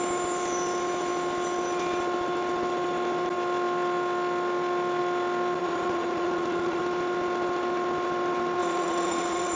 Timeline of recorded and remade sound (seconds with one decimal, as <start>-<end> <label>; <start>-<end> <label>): 0.0-5.6 recorded; 5.6-6.8 remade; 6.8-8.6 recorded; 8.6-9.6 remade